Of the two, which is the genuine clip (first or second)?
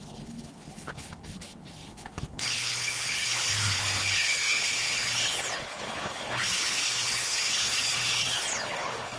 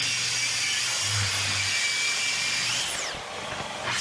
second